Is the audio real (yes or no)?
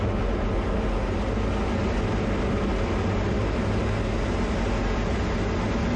yes